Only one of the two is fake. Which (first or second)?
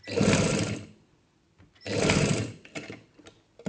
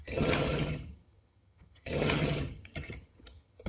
second